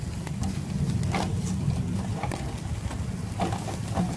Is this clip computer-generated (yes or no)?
no